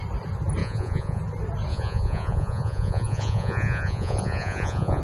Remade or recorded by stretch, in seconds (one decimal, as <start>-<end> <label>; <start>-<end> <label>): 0.0-0.6 recorded; 0.6-1.2 remade; 1.2-1.7 recorded; 1.7-5.0 remade